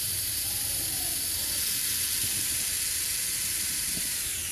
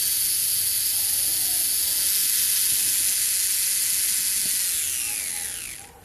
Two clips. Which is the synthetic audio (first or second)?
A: first